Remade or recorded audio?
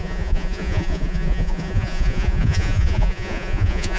remade